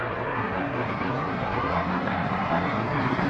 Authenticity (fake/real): fake